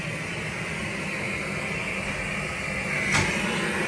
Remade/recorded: recorded